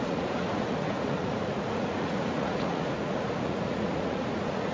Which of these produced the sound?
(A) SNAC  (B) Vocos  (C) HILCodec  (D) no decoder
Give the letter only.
B